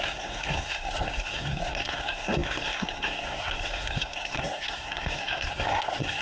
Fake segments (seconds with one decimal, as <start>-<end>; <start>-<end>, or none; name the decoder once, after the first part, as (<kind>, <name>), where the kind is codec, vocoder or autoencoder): 0.0-6.2 (codec, SNAC)